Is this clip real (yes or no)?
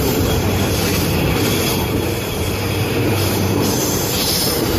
no